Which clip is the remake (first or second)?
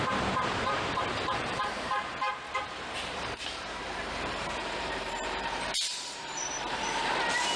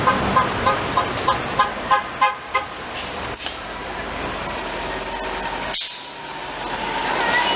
first